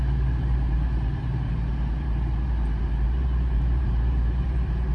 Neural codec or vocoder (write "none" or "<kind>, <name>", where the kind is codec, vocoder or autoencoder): vocoder, BigVGAN v2